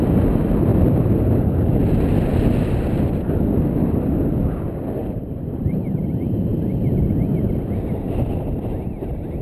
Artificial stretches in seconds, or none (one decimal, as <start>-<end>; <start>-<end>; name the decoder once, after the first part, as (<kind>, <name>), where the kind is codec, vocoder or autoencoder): 5.0-6.5 (vocoder, BigVGAN v2)